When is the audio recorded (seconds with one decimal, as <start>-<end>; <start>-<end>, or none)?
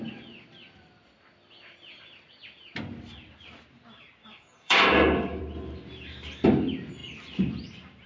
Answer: 0.0-4.2; 5.4-8.1